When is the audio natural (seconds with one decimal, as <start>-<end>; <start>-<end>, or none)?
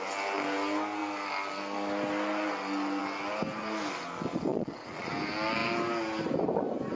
0.0-4.5; 5.1-7.0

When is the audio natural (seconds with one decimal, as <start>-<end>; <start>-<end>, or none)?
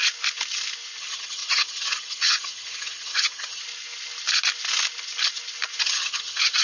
0.0-1.0; 3.6-5.8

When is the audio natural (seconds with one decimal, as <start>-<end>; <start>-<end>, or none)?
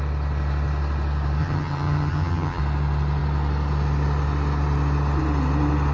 0.0-1.4; 2.6-5.9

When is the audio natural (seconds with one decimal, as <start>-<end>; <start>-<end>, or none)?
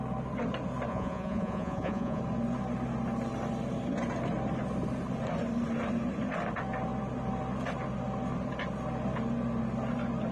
0.0-0.9; 2.2-10.3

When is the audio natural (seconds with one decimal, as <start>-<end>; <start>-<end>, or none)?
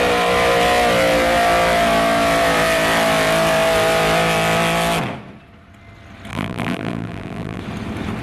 0.0-6.3; 7.6-8.2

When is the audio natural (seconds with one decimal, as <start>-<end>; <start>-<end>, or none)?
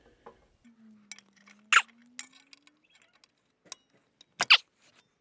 0.0-5.2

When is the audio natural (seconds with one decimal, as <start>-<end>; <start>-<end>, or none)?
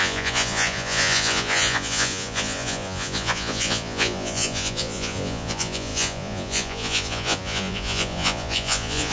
none